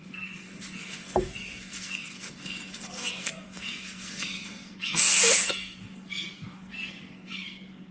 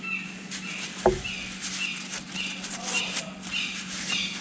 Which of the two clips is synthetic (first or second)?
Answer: first